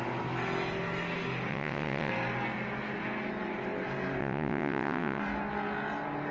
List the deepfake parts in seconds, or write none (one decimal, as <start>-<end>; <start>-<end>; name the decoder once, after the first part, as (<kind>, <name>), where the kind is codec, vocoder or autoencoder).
1.5-2.1 (vocoder, WaveNeXt); 4.2-5.2